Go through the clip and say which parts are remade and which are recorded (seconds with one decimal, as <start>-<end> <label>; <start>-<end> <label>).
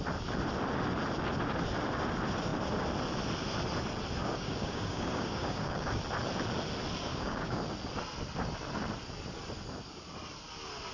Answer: 0.0-4.2 recorded; 4.2-6.0 remade; 6.0-7.1 recorded; 7.1-7.6 remade; 7.6-10.9 recorded